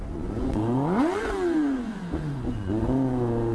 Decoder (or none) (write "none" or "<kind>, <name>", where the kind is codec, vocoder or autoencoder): vocoder, Vocos